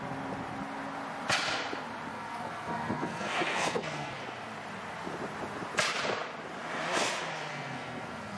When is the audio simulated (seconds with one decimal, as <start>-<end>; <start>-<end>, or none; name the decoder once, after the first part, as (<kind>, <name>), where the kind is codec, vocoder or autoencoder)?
2.1-4.2 (codec, SNAC); 7.5-8.4